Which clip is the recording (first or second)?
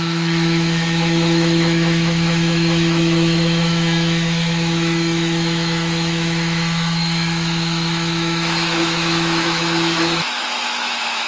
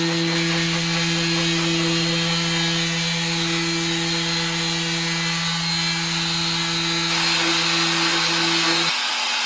second